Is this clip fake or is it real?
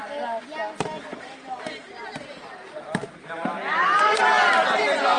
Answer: real